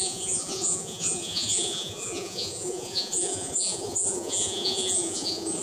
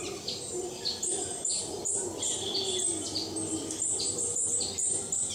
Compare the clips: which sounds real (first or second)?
second